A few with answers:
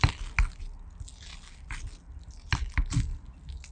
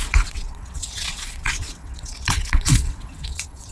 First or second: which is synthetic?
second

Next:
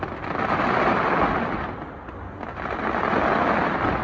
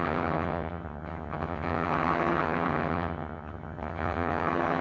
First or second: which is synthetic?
second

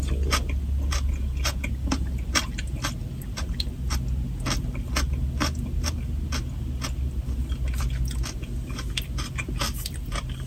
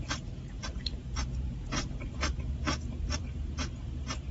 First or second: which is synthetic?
second